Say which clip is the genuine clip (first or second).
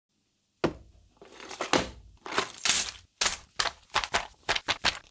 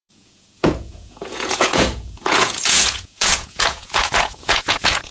first